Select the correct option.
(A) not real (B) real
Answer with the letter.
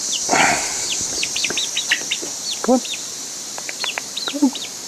A